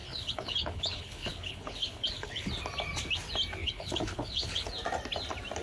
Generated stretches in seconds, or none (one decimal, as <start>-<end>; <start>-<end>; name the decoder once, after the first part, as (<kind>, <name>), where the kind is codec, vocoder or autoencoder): 0.0-2.5 (codec, HILCodec); 3.6-4.7